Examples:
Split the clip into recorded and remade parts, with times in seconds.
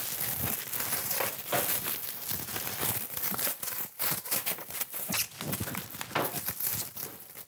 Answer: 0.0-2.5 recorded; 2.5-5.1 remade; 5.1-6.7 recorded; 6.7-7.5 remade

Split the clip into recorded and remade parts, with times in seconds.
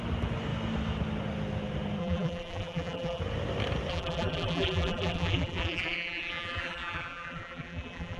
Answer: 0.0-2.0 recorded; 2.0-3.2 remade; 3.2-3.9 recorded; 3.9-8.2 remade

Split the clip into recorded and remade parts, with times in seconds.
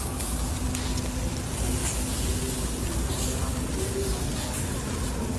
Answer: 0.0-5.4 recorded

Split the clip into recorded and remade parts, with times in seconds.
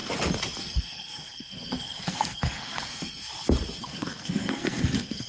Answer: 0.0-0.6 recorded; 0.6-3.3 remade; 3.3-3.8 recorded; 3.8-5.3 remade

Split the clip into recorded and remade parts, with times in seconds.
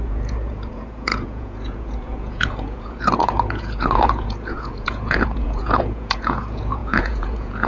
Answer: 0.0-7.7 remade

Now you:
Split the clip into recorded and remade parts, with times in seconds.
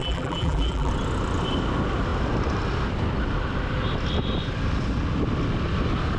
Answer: 0.0-0.9 remade; 0.9-6.2 recorded